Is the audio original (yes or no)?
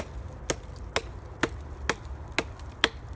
yes